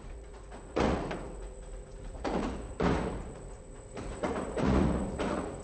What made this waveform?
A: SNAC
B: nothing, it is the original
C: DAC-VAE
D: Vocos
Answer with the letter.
D